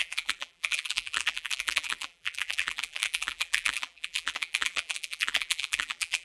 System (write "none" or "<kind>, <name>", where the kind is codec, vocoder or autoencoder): vocoder, BigVGAN v2